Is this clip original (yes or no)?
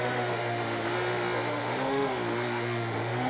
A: no